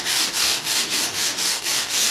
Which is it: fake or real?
fake